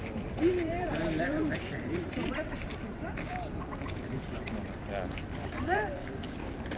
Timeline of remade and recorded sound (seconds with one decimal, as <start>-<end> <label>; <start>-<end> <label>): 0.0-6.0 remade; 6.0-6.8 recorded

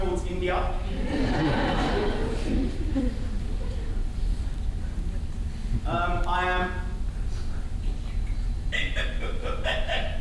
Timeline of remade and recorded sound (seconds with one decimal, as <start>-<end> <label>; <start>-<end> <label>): 0.0-2.2 recorded; 2.2-4.6 remade; 4.6-8.8 recorded; 8.8-9.5 remade; 9.5-10.2 recorded

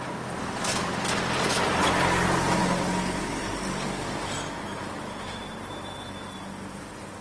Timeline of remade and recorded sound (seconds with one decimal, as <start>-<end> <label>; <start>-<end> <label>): 0.0-7.2 recorded